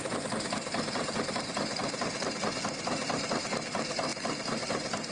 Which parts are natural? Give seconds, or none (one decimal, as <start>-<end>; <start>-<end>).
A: 0.0-4.1